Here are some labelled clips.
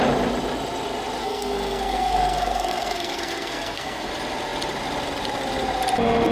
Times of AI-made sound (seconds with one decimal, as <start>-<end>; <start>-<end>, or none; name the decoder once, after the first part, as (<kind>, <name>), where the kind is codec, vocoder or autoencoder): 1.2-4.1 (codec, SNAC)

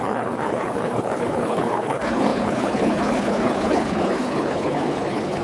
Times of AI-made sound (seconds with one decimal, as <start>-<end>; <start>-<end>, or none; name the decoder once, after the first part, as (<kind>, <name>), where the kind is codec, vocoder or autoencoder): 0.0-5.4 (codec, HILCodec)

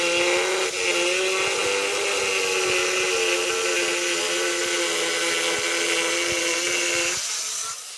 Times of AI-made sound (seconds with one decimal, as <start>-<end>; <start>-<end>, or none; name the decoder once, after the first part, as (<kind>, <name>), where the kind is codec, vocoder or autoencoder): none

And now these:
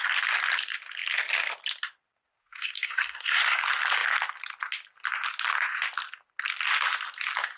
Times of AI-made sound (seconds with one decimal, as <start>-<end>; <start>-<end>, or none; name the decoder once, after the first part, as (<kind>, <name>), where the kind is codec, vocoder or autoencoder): 2.4-3.6 (codec, SNAC)

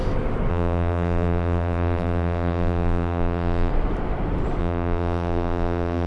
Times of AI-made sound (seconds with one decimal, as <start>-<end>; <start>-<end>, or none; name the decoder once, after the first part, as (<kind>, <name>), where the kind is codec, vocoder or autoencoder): 0.5-3.7 (vocoder, BigVGAN v2); 4.6-6.1

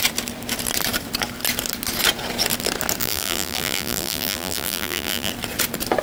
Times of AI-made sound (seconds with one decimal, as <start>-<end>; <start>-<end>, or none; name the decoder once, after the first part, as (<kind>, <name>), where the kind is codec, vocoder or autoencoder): 3.0-5.3 (vocoder, BigVGAN v2)